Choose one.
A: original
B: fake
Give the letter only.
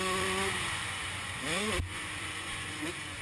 B